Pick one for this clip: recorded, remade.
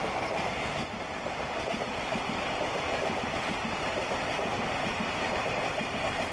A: recorded